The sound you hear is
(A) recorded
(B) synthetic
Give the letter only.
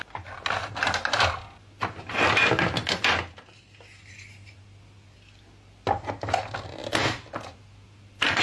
A